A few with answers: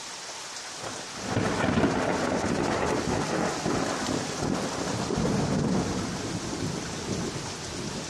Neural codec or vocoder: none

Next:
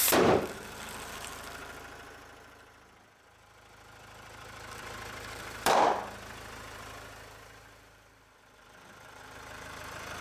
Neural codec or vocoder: vocoder, BigVGAN v2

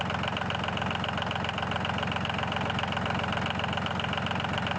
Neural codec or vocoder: none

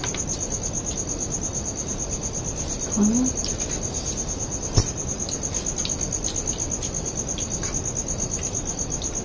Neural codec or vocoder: none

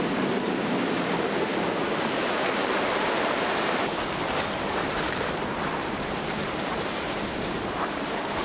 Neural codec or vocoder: vocoder, BigVGAN v2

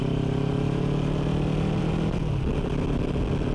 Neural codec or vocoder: none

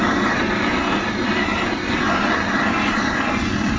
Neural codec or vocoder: none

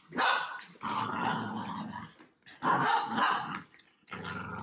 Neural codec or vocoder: none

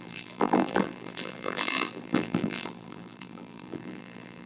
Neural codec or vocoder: vocoder, BigVGAN v2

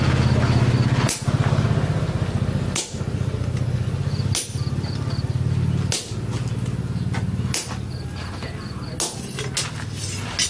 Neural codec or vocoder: none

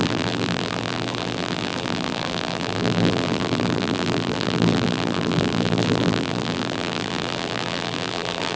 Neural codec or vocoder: vocoder, BigVGAN v2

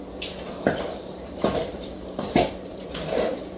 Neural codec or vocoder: vocoder, BigVGAN v2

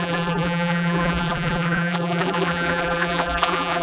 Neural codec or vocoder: vocoder, BigVGAN v2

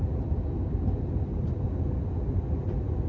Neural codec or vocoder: none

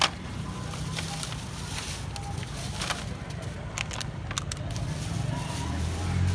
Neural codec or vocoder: none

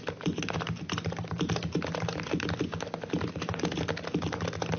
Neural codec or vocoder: none